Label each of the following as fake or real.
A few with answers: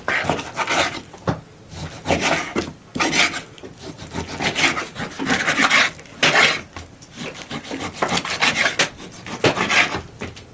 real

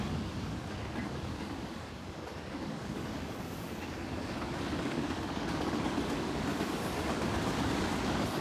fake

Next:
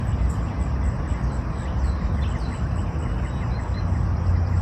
real